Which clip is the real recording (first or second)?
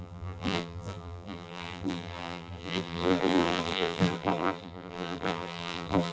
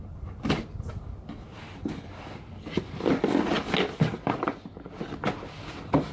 second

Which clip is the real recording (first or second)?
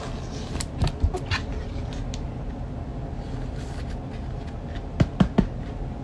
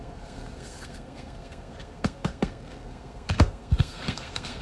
first